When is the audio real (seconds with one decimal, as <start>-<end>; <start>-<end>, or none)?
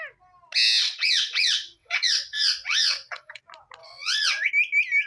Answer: 0.0-0.8; 3.4-3.8; 4.5-5.1